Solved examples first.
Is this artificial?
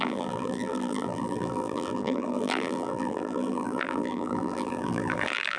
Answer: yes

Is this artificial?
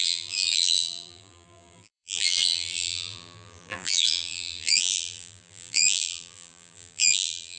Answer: yes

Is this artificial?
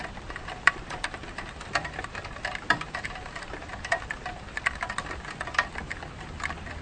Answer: yes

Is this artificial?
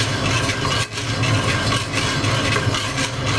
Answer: no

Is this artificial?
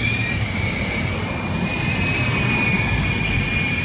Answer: yes